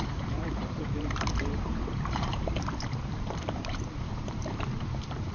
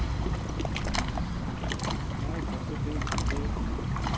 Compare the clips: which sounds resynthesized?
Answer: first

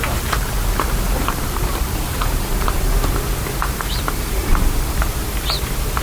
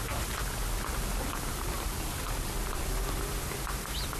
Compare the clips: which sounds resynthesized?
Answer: first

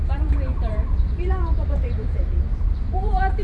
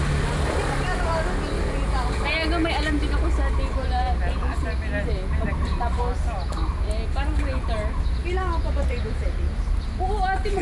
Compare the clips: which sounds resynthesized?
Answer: first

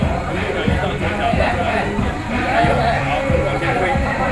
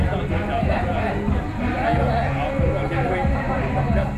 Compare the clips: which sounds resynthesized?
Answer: first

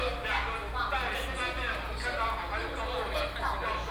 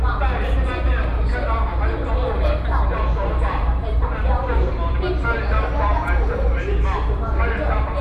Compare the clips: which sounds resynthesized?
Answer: second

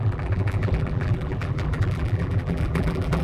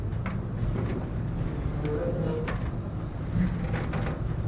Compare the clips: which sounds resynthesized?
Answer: first